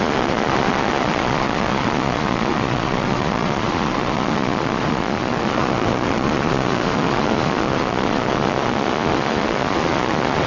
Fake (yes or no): yes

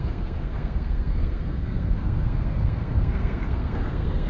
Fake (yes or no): yes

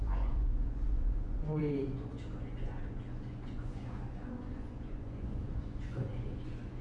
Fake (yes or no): yes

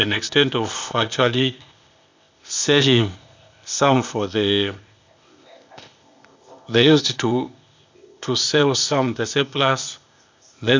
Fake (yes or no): yes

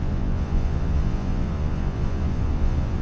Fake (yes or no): yes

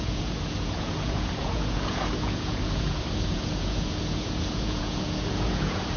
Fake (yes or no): yes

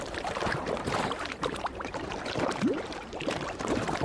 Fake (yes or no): yes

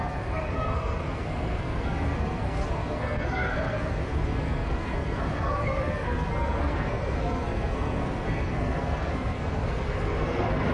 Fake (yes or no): yes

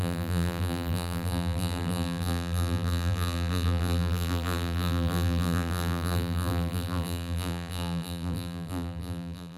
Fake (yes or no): yes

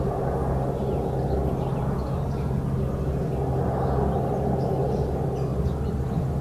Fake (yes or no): no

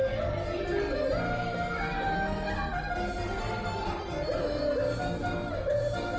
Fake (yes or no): no